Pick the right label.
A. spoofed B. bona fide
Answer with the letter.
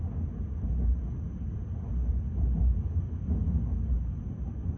B